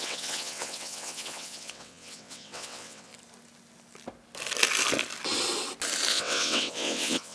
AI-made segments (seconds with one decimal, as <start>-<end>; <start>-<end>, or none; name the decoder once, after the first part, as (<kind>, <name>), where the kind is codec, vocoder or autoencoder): 0.0-3.1 (vocoder, WaveNeXt); 6.1-7.3